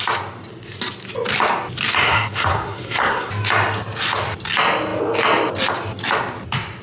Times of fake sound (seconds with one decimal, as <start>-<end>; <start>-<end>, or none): 2.0-3.3